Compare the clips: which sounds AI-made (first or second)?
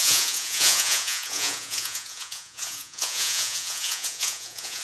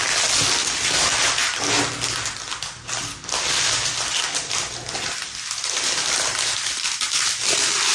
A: first